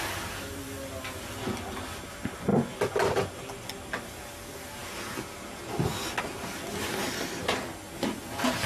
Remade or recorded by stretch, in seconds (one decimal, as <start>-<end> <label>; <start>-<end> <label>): 0.0-8.7 recorded